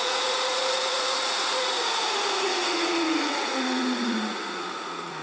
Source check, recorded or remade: remade